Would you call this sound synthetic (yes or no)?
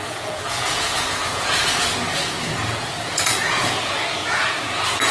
yes